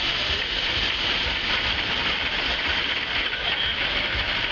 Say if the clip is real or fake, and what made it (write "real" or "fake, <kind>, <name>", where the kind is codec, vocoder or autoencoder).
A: real